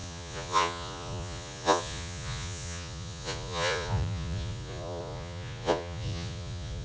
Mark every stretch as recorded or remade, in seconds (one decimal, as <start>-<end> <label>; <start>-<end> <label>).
0.0-6.8 remade